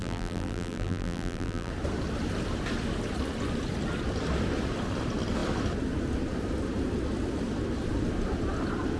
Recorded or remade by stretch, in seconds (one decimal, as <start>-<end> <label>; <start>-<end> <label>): 0.0-1.7 remade; 1.7-9.0 recorded